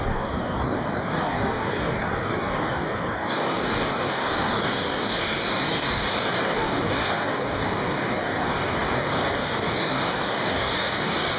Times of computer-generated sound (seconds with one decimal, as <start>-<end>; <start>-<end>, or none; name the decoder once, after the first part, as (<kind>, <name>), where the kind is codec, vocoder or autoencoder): 0.0-11.4 (codec, DAC)